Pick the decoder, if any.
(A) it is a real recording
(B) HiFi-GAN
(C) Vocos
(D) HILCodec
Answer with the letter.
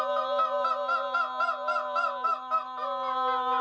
A